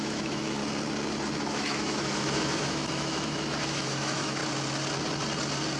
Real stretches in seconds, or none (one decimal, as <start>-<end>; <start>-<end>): 0.6-1.4; 4.4-5.8